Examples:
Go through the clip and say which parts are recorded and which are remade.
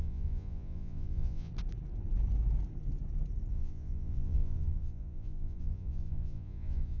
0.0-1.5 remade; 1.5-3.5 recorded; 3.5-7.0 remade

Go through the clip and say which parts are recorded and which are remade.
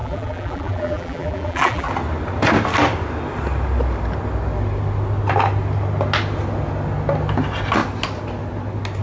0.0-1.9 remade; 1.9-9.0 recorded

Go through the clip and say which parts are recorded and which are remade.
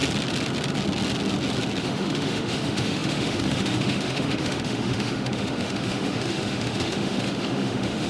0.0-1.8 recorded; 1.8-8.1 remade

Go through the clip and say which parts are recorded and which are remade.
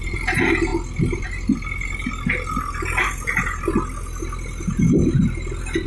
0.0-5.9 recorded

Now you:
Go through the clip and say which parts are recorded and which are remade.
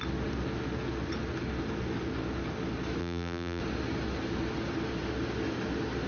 0.0-3.0 recorded; 3.0-3.6 remade; 3.6-6.1 recorded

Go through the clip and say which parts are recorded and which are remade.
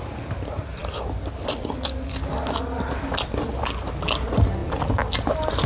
0.0-5.7 recorded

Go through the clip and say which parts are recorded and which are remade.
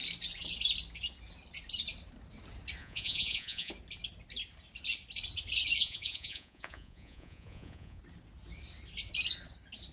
0.0-2.8 recorded; 2.8-3.7 remade; 3.7-5.8 recorded; 5.8-8.0 remade; 8.0-9.9 recorded